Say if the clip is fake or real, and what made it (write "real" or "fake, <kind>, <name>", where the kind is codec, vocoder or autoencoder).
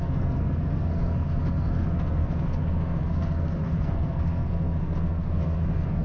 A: fake, codec, SNAC